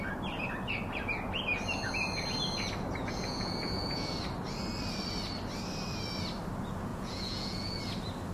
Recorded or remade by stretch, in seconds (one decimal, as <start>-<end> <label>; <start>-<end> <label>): 0.0-3.0 recorded; 3.0-4.1 remade; 4.1-6.9 recorded; 6.9-7.8 remade; 7.8-8.3 recorded